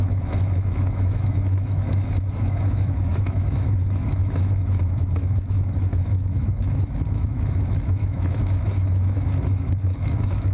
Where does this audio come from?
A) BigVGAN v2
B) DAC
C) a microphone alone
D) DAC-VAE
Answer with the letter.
D